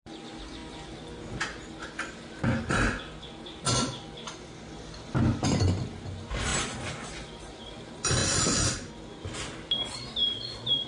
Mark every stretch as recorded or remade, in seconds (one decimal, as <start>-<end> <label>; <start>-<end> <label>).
0.0-10.9 recorded